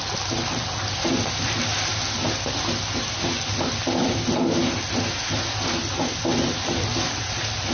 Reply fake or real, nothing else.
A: real